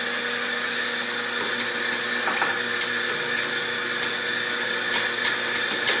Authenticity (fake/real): real